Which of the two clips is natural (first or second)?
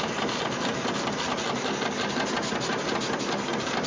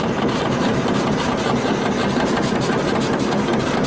first